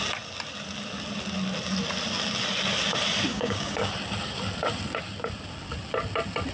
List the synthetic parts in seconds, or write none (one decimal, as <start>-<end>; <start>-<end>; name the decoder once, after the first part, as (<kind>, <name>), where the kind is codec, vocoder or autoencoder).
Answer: 3.3-3.9 (codec, DAC)